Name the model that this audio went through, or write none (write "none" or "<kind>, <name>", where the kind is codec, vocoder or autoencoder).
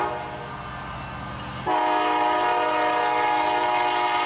none